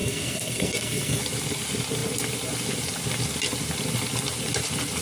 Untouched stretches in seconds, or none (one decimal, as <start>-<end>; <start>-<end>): 1.2-5.0